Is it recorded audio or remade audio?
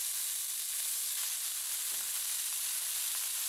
recorded